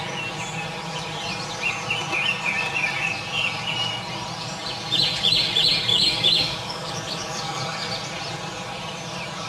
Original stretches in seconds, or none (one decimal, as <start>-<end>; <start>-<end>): 0.0-5.9; 7.6-9.5